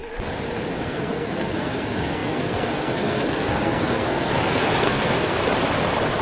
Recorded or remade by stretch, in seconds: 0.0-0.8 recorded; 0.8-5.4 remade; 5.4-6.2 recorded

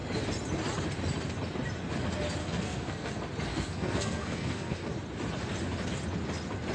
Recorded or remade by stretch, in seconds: 0.0-2.4 recorded; 2.4-3.1 remade; 3.1-3.5 recorded; 3.5-4.9 remade; 4.9-6.7 recorded

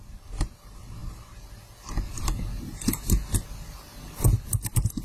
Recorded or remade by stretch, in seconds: 0.0-5.0 recorded

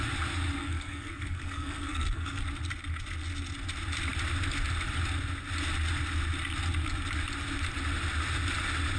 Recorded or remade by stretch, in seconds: 0.0-0.6 recorded; 0.6-2.4 remade; 2.4-9.0 recorded

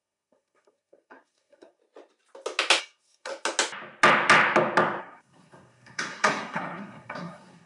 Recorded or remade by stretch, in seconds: 0.0-1.8 remade; 1.8-2.8 recorded; 2.8-3.3 remade; 3.3-5.0 recorded; 5.0-7.7 remade

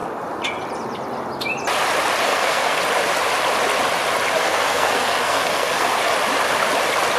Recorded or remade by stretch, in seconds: 0.0-2.3 recorded; 2.3-2.8 remade; 2.8-4.4 recorded; 4.4-6.0 remade; 6.0-7.2 recorded

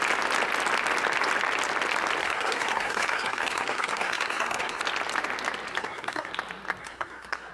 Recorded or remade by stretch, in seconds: 0.0-2.2 recorded; 2.2-4.8 remade; 4.8-5.8 recorded; 5.8-6.3 remade; 6.3-6.8 recorded; 6.8-7.5 remade